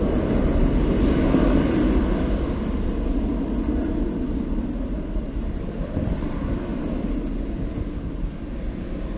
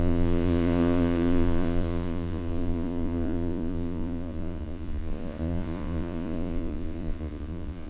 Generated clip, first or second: second